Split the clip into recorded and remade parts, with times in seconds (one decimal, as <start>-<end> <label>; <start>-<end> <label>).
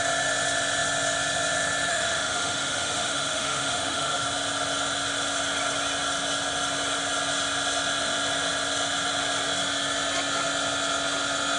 0.0-1.9 recorded; 1.9-4.2 remade; 4.2-11.6 recorded